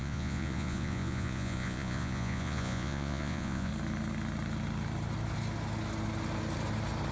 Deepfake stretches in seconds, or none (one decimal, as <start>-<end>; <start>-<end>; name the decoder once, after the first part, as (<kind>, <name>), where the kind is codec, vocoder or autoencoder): 0.0-3.7 (vocoder, Vocos)